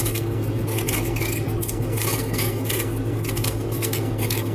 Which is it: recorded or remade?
remade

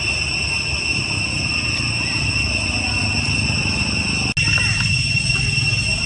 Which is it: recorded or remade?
recorded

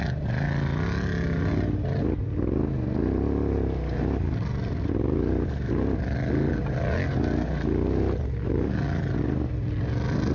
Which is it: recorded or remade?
recorded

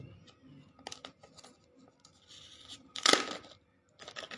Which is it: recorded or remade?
recorded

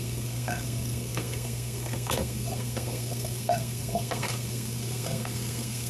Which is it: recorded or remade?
remade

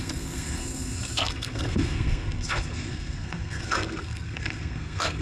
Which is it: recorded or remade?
remade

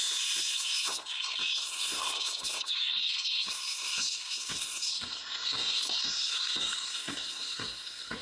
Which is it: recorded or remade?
remade